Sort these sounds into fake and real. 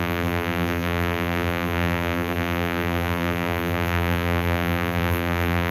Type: fake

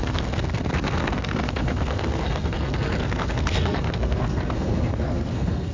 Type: fake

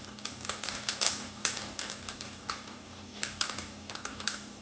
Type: fake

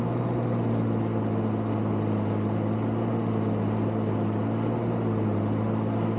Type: real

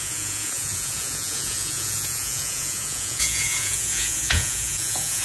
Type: fake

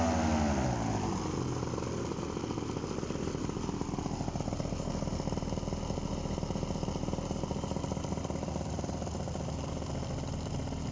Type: real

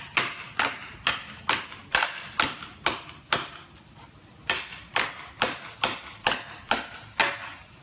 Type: real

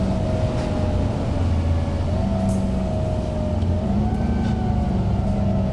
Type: real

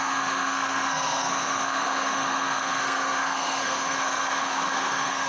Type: fake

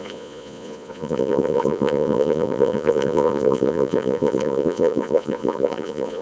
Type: fake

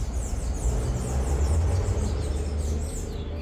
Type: real